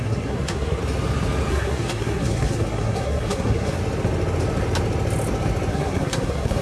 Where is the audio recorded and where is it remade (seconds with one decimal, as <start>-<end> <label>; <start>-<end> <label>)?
0.0-0.8 remade; 0.8-1.5 recorded; 1.5-3.8 remade; 3.8-5.7 recorded; 5.7-6.6 remade